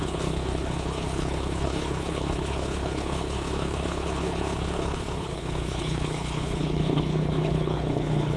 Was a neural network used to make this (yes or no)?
yes